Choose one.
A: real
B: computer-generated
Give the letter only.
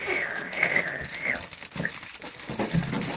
A